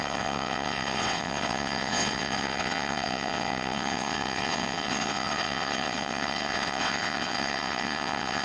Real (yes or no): no